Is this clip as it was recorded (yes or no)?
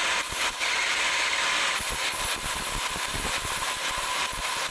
yes